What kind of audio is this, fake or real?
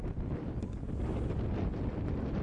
real